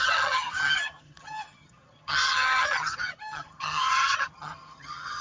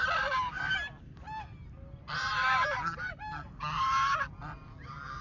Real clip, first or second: second